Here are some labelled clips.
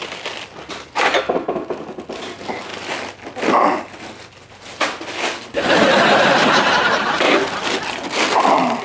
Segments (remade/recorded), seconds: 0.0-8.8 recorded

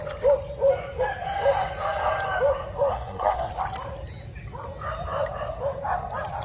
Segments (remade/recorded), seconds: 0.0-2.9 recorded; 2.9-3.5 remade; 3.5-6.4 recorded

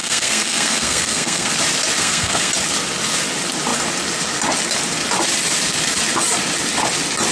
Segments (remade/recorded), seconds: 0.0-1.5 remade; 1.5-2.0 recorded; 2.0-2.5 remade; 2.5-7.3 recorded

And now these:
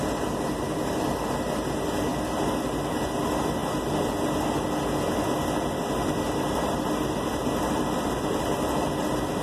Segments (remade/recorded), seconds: 0.0-9.4 recorded